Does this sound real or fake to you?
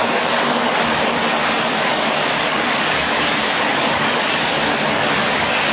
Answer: fake